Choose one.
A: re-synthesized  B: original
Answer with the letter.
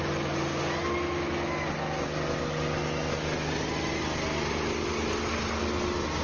B